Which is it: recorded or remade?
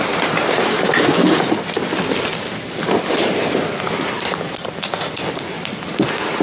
recorded